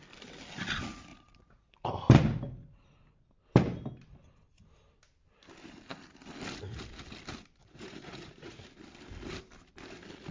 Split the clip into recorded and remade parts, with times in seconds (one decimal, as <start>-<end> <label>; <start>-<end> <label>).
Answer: 0.0-1.1 recorded; 1.1-1.9 remade; 1.9-7.6 recorded; 7.6-8.6 remade; 8.6-10.3 recorded